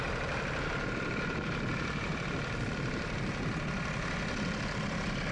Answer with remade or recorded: recorded